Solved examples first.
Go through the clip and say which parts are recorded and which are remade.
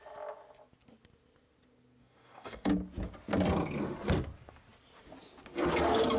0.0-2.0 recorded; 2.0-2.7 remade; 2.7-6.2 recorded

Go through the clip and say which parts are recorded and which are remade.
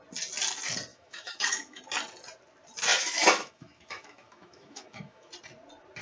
0.0-0.9 recorded; 0.9-1.8 remade; 1.8-2.9 recorded; 2.9-5.3 remade; 5.3-6.0 recorded